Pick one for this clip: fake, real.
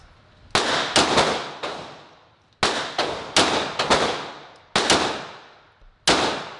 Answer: real